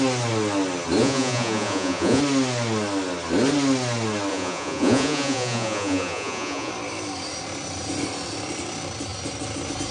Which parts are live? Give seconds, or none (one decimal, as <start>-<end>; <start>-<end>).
0.0-1.0; 2.2-4.3; 6.7-9.9